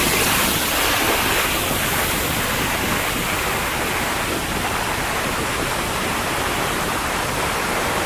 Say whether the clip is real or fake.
fake